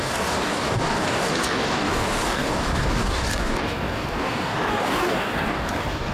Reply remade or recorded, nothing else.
remade